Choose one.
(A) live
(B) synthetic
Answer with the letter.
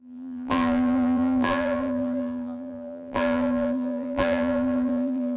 B